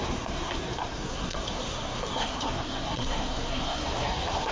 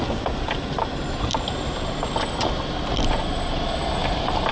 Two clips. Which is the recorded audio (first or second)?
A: second